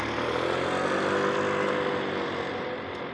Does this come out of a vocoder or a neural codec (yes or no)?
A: no